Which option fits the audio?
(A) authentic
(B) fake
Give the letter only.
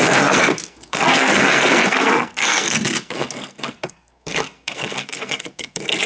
B